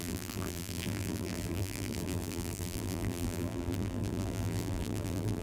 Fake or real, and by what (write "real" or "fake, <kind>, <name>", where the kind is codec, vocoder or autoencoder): fake, vocoder, BigVGAN v2